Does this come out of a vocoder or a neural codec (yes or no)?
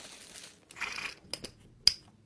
no